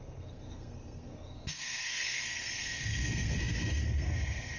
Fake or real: fake